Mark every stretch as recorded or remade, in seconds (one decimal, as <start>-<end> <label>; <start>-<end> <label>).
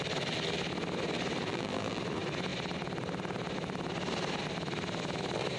0.0-1.5 recorded; 1.5-2.0 remade; 2.0-5.6 recorded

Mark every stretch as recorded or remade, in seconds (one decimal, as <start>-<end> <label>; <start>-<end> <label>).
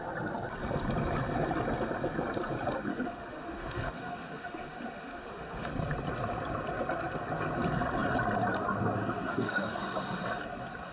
0.0-2.9 recorded; 2.9-5.7 remade; 5.7-9.3 recorded; 9.3-9.8 remade; 9.8-10.9 recorded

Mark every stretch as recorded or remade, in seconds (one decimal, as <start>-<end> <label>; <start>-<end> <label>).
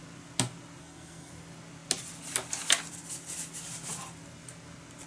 0.0-0.8 recorded; 0.8-1.3 remade; 1.3-5.1 recorded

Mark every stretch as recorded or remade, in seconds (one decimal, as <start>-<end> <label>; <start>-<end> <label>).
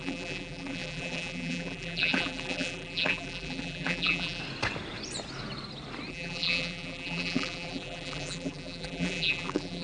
0.0-4.4 remade; 4.4-6.1 recorded; 6.1-9.8 remade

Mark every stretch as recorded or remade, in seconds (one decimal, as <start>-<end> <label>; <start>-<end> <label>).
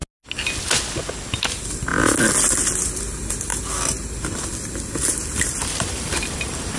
0.0-4.5 recorded; 4.5-6.8 remade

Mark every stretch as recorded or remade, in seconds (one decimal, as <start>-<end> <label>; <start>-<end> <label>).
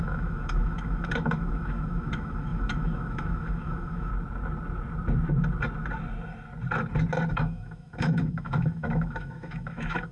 0.0-4.1 remade; 4.1-7.3 recorded; 7.3-10.1 remade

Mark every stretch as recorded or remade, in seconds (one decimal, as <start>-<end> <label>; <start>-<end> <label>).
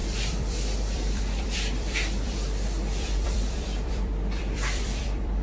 0.0-5.4 remade